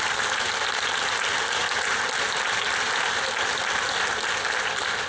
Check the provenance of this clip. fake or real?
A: real